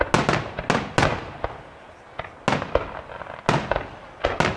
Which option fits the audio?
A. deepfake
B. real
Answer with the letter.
B